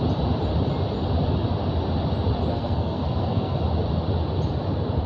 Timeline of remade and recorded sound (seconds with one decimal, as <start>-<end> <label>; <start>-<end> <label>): 0.0-2.5 recorded; 2.5-3.6 remade; 3.6-5.1 recorded